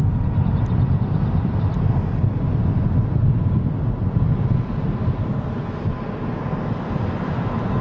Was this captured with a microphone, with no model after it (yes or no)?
yes